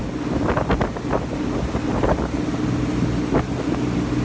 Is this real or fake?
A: real